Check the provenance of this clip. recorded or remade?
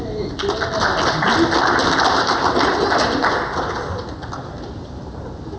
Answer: recorded